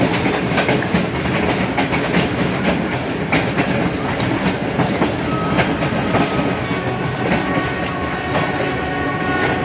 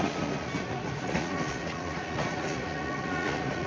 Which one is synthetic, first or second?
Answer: second